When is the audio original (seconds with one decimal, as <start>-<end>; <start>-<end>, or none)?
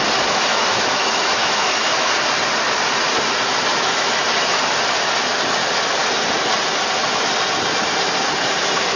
0.0-0.5; 2.1-3.7; 4.2-9.0